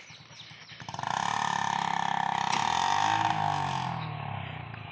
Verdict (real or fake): real